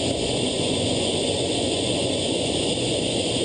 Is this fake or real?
fake